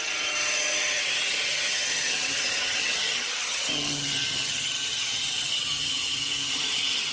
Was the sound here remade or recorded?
remade